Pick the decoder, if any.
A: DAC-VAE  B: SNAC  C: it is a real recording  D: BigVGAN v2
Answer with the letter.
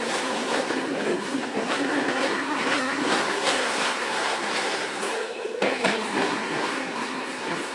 B